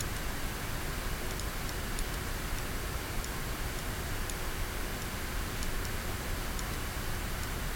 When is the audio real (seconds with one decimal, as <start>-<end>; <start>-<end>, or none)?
2.6-7.8